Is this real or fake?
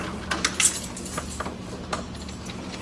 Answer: real